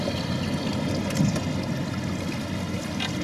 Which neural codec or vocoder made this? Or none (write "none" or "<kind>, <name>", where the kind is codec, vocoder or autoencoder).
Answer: none